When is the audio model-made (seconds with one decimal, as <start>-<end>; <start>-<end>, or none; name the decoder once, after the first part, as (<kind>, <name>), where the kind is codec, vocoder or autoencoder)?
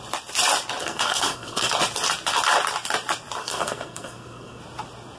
0.8-1.7 (codec, SNAC); 3.4-4.6